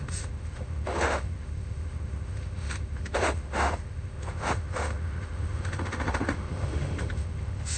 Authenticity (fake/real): fake